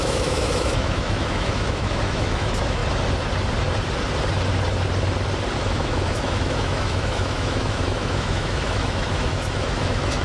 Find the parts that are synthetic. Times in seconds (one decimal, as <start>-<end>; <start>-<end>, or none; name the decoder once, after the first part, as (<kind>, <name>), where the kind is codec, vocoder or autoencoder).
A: 0.0-2.8 (autoencoder, DAC-VAE); 5.6-10.2